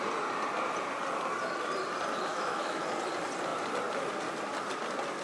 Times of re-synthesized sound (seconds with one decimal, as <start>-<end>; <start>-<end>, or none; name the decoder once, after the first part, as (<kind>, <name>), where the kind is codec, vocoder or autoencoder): 2.3-2.8 (autoencoder, DAC-VAE)